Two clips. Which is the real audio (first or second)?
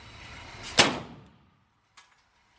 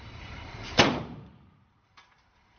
first